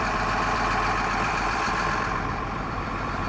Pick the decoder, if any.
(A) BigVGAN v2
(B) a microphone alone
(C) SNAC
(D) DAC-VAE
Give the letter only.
A